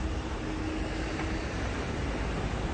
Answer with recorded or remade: recorded